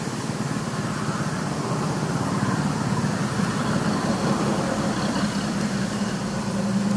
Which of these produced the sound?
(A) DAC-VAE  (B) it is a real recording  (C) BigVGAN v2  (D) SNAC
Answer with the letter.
B